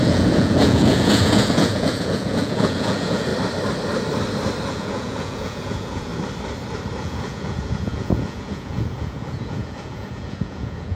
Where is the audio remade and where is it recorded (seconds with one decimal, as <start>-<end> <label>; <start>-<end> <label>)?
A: 0.0-3.3 remade; 3.3-4.7 recorded; 4.7-6.1 remade; 6.1-7.0 recorded; 7.0-11.0 remade